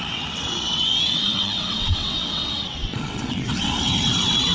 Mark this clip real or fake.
fake